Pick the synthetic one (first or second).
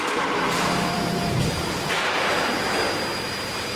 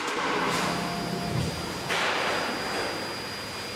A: first